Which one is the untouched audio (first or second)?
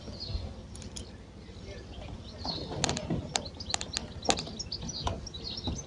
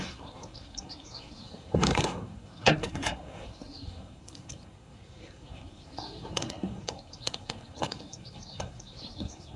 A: first